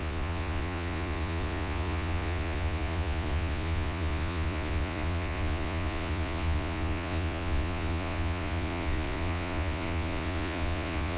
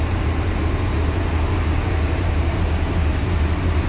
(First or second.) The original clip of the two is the second